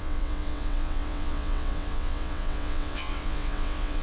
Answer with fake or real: fake